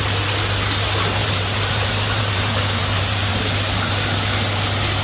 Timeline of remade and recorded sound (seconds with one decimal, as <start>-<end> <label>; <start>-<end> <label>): 0.0-1.2 recorded; 1.2-3.4 remade; 3.4-5.0 recorded